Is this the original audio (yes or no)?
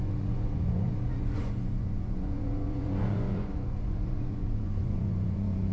no